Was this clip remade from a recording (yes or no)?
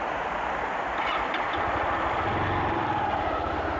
no